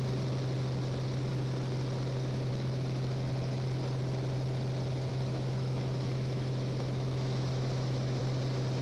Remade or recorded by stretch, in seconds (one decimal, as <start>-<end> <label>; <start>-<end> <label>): 0.0-5.1 recorded; 5.1-8.2 remade; 8.2-8.8 recorded